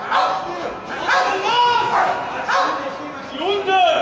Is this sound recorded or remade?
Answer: recorded